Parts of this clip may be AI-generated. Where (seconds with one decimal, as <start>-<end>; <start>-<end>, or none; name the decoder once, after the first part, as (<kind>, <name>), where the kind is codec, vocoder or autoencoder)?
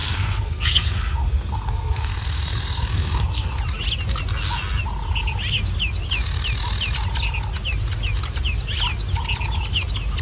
0.0-3.6 (codec, SNAC)